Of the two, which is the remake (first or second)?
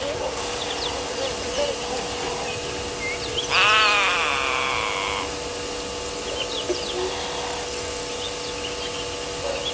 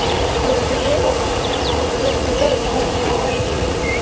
second